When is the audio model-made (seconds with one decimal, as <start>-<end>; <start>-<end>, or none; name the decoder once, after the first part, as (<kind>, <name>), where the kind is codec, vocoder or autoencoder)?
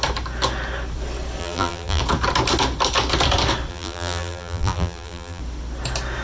1.4-2.0 (vocoder, BigVGAN v2); 3.7-5.4